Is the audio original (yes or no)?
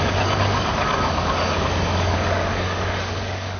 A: no